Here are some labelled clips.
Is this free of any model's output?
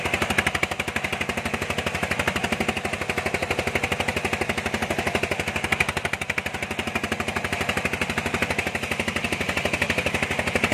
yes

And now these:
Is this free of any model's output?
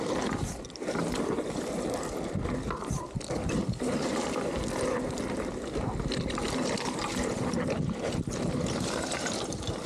yes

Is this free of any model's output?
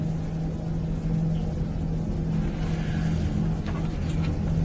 yes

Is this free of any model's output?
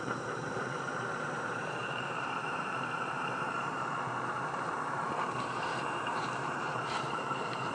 no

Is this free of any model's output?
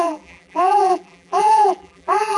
no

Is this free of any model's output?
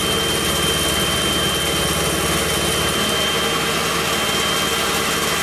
yes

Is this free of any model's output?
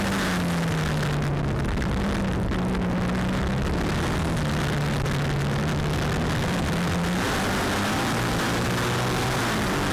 yes